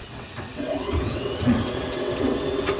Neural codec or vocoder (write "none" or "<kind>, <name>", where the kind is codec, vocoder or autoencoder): vocoder, WaveNeXt